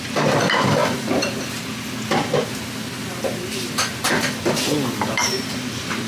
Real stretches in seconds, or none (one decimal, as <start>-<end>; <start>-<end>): 0.8-4.3